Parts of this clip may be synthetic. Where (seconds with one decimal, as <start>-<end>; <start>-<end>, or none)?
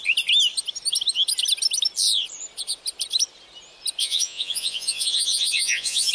4.0-6.1